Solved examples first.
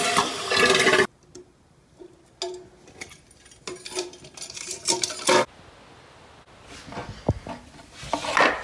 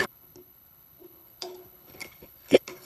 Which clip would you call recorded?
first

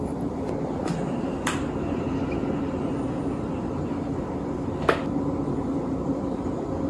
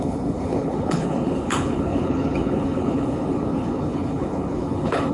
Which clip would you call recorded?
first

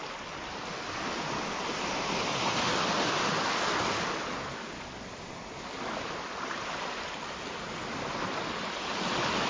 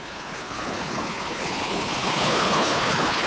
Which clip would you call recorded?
first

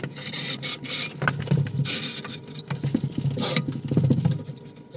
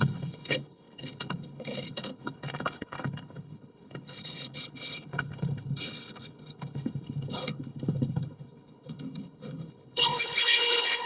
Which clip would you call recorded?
first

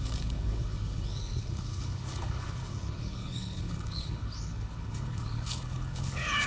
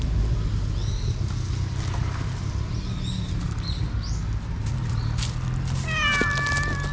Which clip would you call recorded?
second